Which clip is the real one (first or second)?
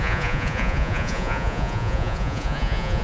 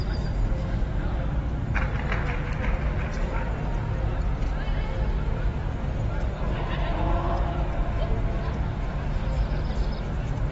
second